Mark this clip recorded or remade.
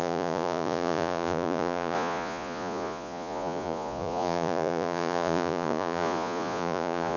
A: remade